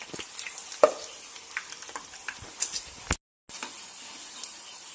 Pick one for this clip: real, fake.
real